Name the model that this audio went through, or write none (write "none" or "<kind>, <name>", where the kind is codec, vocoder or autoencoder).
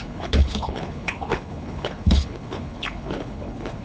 codec, HILCodec